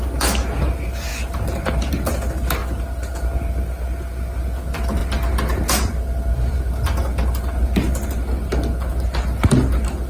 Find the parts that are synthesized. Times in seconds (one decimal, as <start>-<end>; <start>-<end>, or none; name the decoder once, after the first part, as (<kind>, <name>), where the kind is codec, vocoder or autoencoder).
none